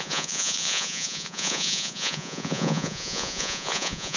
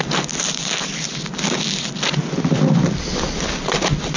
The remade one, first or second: first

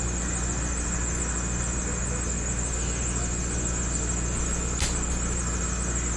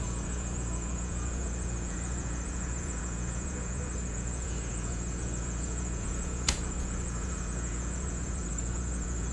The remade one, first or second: second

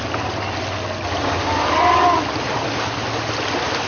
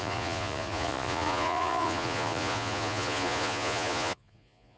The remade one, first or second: second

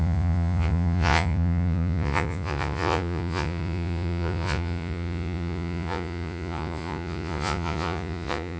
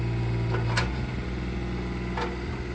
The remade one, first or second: first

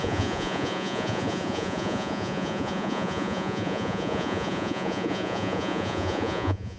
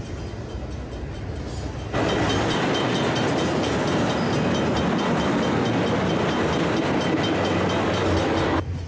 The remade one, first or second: first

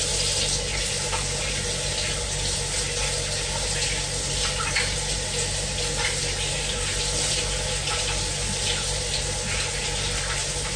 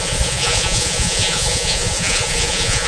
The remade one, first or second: second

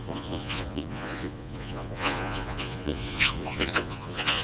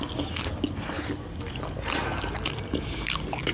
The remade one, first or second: first